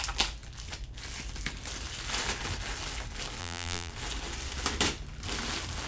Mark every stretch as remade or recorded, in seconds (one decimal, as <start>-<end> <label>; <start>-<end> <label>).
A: 0.0-3.4 recorded; 3.4-3.9 remade; 3.9-5.9 recorded